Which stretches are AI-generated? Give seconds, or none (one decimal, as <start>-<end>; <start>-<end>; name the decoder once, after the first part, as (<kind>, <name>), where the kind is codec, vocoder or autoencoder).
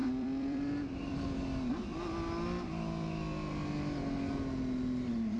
0.0-1.2 (vocoder, BigVGAN v2)